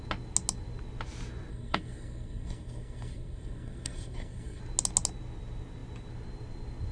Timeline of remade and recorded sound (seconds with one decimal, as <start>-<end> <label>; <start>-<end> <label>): 0.0-1.5 recorded; 1.5-4.6 remade; 4.6-6.9 recorded